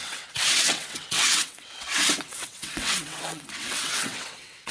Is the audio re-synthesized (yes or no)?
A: yes